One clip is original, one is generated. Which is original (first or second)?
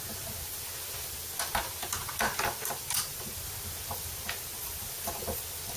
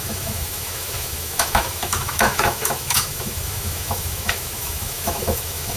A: first